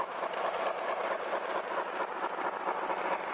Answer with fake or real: real